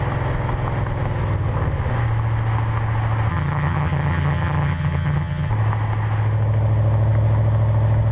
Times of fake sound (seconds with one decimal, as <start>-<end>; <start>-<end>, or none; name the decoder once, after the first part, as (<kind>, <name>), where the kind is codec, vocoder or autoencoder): 3.3-5.5 (vocoder, HiFi-GAN)

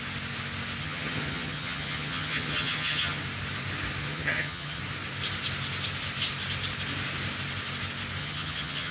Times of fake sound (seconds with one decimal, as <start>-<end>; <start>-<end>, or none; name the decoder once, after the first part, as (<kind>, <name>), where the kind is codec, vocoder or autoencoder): 0.8-3.2 (vocoder, HiFi-GAN); 4.0-4.8; 8.2-8.9

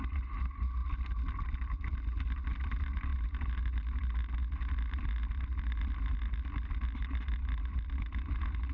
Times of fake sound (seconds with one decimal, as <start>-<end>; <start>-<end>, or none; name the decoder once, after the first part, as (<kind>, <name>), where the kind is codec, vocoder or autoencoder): none